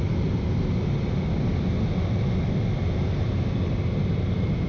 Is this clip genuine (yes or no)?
yes